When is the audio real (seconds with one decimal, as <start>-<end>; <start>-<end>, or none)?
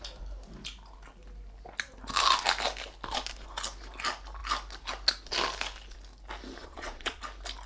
0.0-6.6; 7.2-7.7